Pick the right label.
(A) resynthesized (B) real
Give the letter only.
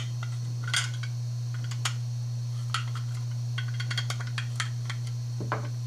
B